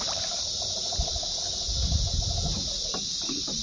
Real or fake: fake